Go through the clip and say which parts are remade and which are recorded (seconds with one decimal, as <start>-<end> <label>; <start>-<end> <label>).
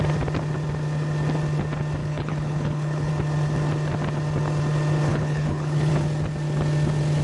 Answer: 0.0-2.0 recorded; 2.0-3.1 remade; 3.1-5.1 recorded; 5.1-5.9 remade; 5.9-7.2 recorded